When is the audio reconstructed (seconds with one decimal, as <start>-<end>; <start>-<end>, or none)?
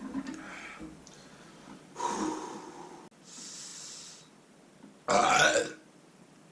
none